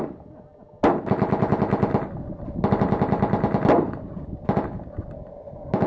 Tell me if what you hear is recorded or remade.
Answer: recorded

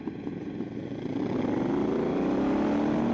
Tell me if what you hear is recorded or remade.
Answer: recorded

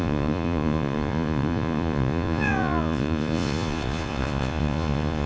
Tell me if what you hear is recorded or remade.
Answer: remade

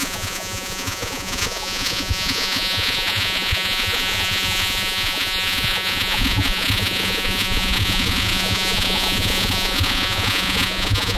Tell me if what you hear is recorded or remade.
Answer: remade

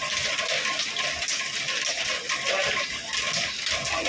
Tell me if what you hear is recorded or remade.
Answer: recorded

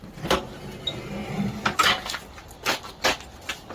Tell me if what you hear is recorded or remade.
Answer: recorded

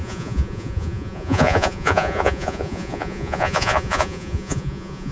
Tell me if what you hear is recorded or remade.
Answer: remade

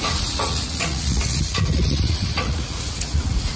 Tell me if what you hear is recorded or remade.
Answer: remade